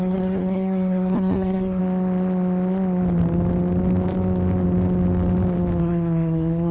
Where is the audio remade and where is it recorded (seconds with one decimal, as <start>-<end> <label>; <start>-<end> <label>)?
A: 0.0-1.8 remade; 1.8-5.8 recorded; 5.8-6.7 remade